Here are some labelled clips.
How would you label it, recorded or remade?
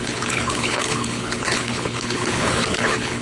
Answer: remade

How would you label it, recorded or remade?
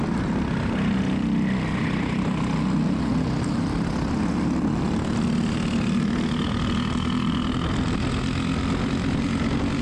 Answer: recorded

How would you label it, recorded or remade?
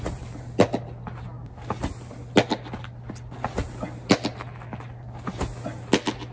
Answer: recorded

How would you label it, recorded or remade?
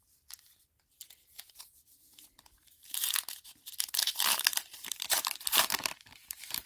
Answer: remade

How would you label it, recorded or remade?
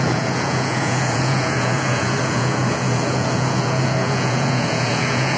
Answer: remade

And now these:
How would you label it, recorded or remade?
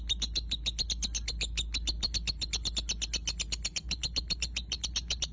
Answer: recorded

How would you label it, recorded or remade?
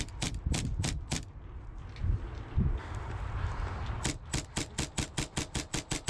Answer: recorded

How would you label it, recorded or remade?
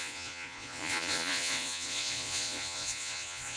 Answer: remade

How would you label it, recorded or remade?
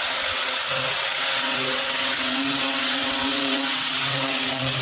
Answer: remade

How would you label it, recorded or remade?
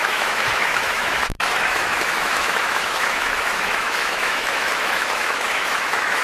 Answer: remade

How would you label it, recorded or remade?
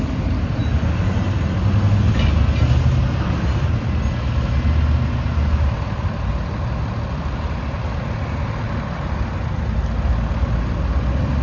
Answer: recorded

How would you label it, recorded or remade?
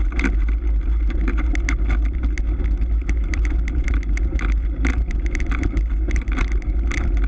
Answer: recorded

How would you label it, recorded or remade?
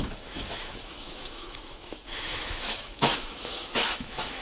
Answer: remade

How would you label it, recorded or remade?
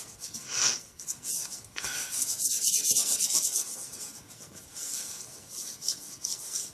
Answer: remade